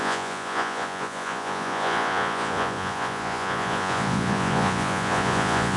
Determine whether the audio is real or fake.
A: fake